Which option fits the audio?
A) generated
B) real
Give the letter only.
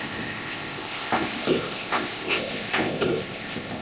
A